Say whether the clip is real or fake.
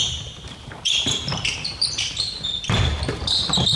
real